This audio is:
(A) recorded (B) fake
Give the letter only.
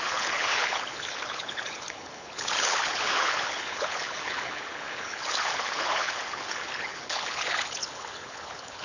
B